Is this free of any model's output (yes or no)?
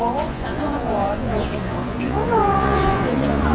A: no